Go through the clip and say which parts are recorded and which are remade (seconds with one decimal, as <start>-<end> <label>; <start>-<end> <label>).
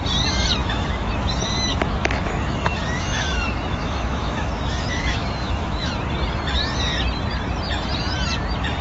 0.0-0.6 recorded; 0.6-1.1 remade; 1.1-1.7 recorded; 1.7-5.9 remade; 5.9-8.8 recorded